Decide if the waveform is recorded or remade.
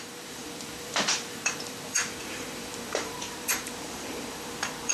remade